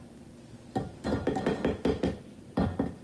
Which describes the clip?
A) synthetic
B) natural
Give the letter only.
B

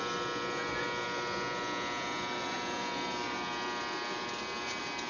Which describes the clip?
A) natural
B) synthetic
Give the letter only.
A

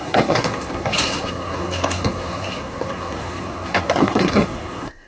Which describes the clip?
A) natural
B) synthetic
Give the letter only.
B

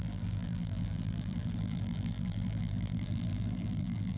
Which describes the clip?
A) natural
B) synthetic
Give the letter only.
B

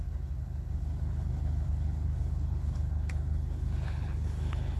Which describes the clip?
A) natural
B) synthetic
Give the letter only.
B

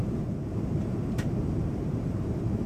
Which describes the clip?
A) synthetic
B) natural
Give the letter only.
A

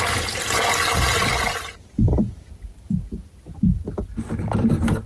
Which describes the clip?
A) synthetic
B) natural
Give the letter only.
B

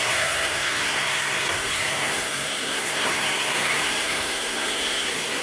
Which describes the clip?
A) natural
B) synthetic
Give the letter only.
B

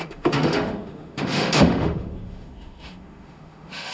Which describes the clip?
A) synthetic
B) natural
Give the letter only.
A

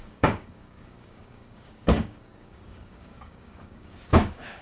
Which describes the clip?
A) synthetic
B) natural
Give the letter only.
A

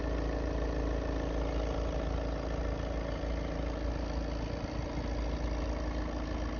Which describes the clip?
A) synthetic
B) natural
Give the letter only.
B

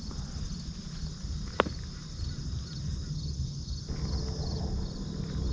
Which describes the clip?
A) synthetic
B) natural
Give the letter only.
B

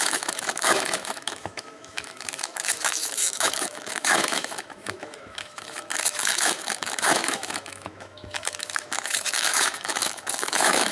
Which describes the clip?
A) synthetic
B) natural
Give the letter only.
A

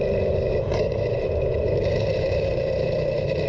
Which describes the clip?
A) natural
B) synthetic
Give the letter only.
B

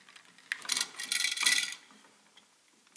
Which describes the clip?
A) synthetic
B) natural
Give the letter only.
B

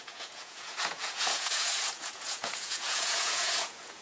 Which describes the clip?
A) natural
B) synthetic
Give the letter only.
B